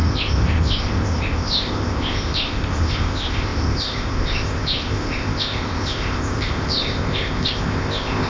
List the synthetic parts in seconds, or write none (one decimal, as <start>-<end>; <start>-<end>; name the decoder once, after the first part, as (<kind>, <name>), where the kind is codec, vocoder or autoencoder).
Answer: 0.0-8.3 (codec, ZipCodec)